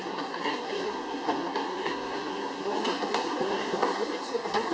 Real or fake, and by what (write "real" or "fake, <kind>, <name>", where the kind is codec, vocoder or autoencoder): fake, codec, SNAC